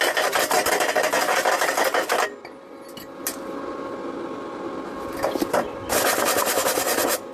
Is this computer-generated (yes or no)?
no